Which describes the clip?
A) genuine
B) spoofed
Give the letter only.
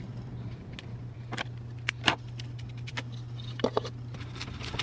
A